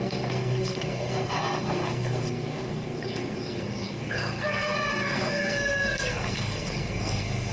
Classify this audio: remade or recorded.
remade